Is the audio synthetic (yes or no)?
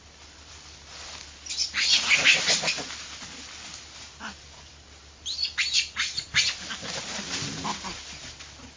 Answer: no